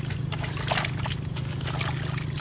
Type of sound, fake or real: real